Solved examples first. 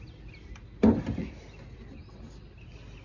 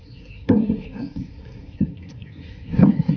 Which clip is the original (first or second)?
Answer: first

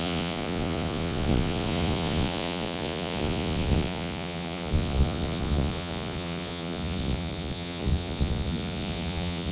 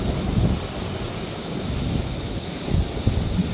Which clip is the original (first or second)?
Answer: second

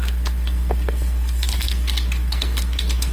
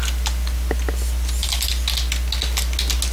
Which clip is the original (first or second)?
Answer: second